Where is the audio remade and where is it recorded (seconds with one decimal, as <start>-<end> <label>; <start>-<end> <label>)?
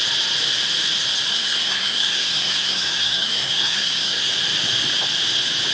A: 0.0-1.3 recorded; 1.3-4.3 remade; 4.3-5.7 recorded